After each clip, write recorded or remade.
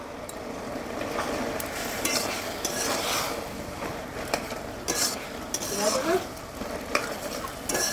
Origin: recorded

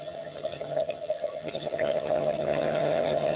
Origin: remade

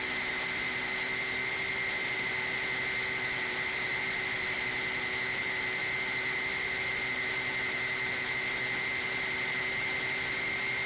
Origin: recorded